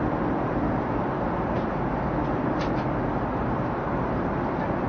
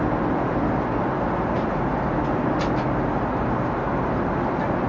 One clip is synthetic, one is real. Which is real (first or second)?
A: second